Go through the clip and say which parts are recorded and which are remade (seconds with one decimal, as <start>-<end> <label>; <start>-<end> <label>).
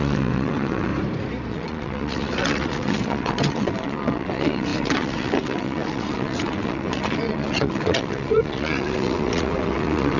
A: 0.0-0.9 remade; 0.9-1.5 recorded; 1.5-10.2 remade